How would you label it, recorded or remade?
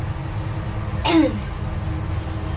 recorded